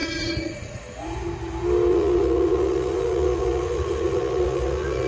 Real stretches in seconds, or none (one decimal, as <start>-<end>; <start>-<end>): 0.8-1.9